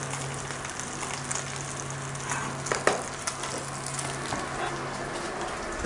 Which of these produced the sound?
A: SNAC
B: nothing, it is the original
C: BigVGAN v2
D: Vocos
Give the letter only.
B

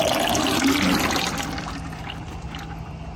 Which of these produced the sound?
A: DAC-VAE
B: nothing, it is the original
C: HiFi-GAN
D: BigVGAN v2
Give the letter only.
B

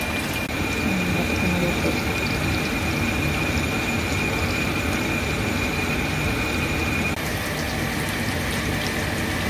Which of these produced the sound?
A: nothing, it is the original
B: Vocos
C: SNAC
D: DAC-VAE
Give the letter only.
A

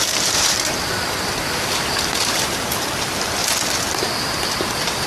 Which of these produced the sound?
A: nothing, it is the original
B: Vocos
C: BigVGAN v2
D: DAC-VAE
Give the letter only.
C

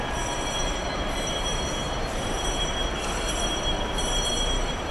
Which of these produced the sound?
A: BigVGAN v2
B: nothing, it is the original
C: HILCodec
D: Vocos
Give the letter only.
A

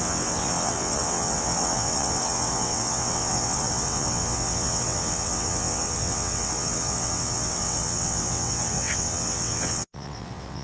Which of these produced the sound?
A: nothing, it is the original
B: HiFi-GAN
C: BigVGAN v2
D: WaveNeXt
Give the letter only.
D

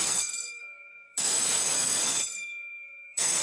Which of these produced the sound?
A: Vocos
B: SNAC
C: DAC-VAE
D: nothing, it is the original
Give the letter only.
B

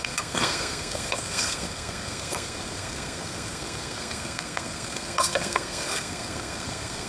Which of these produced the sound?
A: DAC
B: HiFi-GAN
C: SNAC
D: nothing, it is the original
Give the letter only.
C